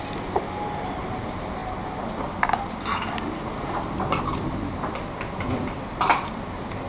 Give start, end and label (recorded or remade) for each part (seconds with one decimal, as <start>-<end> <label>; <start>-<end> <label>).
0.0-6.9 recorded